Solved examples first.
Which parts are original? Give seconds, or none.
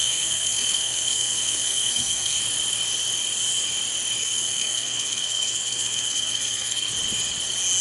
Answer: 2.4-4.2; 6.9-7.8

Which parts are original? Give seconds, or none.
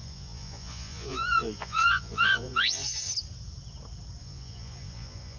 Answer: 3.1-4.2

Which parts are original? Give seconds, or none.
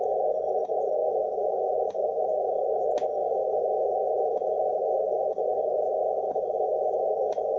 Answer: 0.0-1.0; 2.5-3.2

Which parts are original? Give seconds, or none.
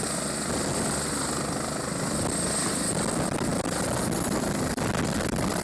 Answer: 0.0-5.6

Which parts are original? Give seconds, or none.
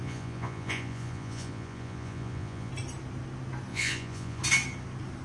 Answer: 2.7-3.7; 4.4-5.2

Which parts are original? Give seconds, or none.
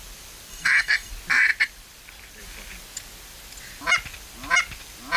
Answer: 0.0-0.5; 1.1-5.2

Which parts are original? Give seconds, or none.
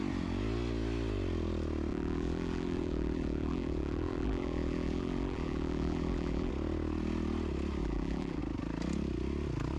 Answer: 0.0-1.9; 6.5-7.8; 8.4-9.8